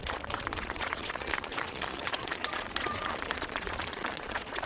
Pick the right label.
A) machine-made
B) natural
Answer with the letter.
A